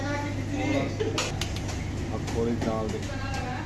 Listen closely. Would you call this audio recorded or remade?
recorded